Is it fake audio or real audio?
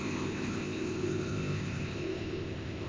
fake